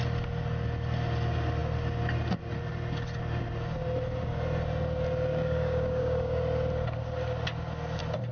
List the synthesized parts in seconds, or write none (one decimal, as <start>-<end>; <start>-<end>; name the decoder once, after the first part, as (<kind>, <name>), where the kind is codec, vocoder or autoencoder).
5.3-6.4 (codec, DAC)

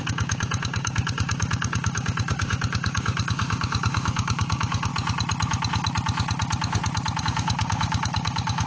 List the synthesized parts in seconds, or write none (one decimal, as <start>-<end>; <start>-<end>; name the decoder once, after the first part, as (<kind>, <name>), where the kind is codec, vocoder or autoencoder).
0.0-4.9 (codec, DAC); 7.2-8.7

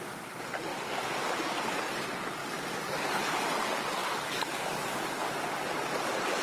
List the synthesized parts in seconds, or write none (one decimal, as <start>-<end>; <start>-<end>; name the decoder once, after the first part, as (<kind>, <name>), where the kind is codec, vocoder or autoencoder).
0.7-1.6 (codec, DAC); 2.4-3.2; 4.0-5.3

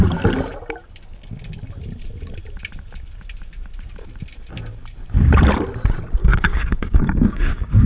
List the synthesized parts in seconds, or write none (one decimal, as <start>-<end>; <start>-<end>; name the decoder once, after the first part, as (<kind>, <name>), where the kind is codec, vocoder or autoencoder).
6.2-7.8 (codec, DAC)

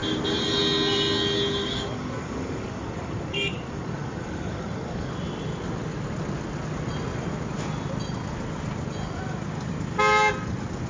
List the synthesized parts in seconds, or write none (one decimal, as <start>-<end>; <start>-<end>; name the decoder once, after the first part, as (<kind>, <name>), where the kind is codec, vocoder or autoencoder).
1.6-5.1 (codec, DAC)